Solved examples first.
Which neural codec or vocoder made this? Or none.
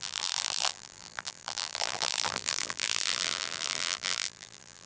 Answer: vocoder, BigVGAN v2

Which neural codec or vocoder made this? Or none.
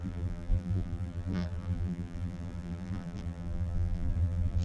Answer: vocoder, BigVGAN v2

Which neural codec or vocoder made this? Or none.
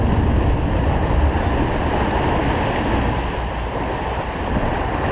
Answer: none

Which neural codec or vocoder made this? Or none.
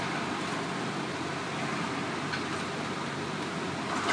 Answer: vocoder, BigVGAN v2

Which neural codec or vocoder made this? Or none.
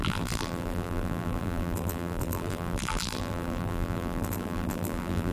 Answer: vocoder, BigVGAN v2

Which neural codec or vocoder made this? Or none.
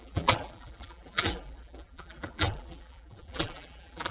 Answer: vocoder, BigVGAN v2